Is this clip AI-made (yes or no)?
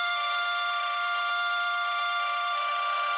yes